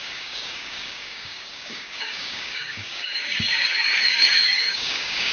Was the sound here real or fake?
fake